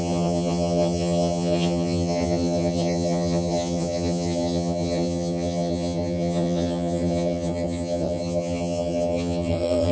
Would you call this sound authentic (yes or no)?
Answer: no